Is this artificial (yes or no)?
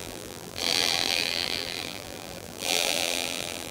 yes